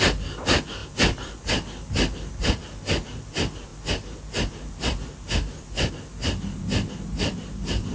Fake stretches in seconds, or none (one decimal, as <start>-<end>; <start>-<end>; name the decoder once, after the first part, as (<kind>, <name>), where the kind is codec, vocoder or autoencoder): none